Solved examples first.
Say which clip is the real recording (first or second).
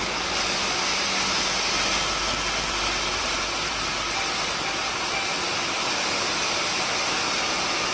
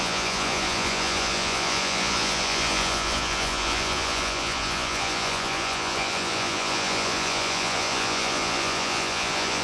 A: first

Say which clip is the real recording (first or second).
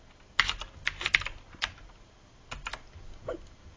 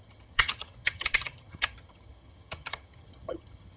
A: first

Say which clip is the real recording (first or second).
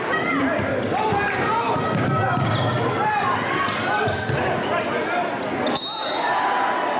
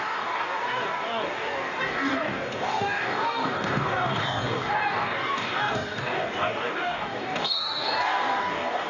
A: first